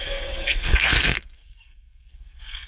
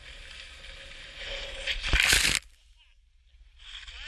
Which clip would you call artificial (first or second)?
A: first